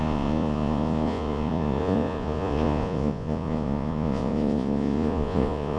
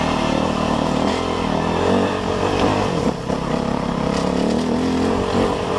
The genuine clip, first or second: second